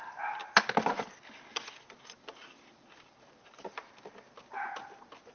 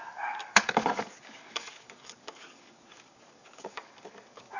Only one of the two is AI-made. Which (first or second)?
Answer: second